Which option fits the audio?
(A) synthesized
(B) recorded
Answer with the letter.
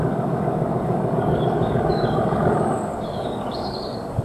A